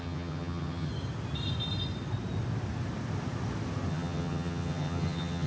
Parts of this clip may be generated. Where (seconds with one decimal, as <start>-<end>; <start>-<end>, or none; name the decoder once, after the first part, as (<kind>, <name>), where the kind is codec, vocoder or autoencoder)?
0.0-0.9 (vocoder, HiFi-GAN); 3.9-5.5